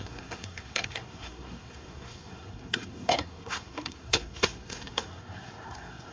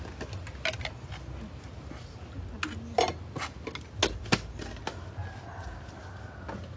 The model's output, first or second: first